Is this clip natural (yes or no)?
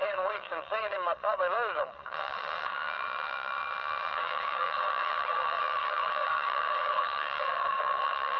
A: no